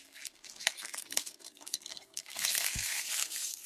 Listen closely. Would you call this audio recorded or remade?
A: remade